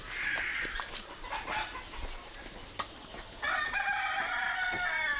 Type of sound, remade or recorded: recorded